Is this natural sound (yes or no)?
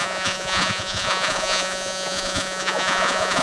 no